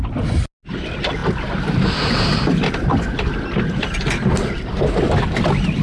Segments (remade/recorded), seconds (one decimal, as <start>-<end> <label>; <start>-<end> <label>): 0.0-5.8 recorded